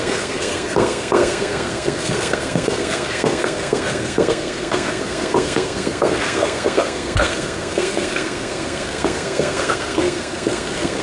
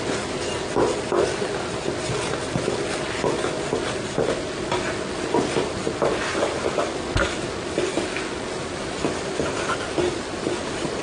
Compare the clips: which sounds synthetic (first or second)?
first